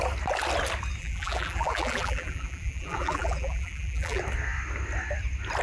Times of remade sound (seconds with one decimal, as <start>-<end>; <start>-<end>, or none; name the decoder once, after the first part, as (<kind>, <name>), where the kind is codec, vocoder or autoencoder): 1.0-4.2 (vocoder, BigVGAN v2)

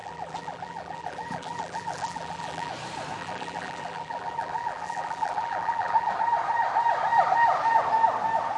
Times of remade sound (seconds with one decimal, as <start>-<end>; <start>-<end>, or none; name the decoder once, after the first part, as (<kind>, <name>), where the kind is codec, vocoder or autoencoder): 0.0-2.7 (vocoder, BigVGAN v2); 3.2-6.1

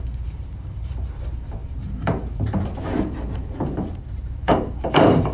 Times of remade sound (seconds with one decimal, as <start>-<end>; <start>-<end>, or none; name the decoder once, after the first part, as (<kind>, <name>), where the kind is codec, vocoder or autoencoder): 0.0-5.3 (vocoder, BigVGAN v2)

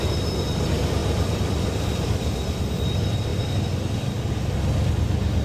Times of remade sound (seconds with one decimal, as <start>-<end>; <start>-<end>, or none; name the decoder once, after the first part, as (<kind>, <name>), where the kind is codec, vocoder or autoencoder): 1.0-2.7 (vocoder, BigVGAN v2)

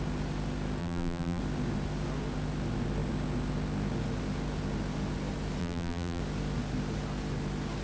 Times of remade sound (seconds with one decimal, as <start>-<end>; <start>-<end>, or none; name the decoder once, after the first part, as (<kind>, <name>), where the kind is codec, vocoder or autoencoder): 0.8-1.4 (vocoder, BigVGAN v2); 5.6-6.2

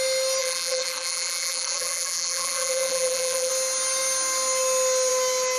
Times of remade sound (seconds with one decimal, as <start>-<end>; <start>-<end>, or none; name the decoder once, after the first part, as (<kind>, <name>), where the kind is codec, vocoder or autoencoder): 0.4-3.5 (vocoder, BigVGAN v2)

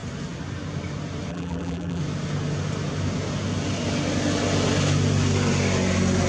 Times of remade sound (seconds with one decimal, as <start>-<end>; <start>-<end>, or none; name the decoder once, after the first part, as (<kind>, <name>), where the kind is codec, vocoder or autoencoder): 1.3-2.0 (vocoder, BigVGAN v2)

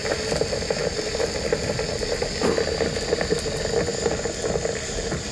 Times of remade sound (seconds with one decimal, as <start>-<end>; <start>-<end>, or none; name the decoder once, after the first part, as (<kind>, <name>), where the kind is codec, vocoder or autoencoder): 0.0-3.2 (vocoder, BigVGAN v2); 3.9-4.4